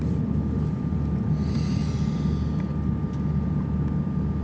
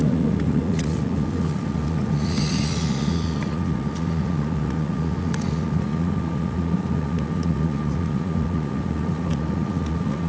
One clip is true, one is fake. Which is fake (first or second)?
second